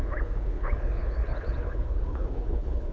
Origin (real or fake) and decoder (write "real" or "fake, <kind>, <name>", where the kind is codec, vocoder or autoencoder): fake, codec, HILCodec